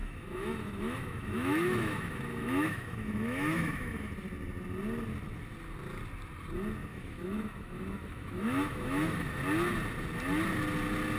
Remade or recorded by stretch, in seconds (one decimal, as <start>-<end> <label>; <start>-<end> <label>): 0.0-4.1 remade; 4.1-6.9 recorded; 6.9-9.4 remade; 9.4-11.2 recorded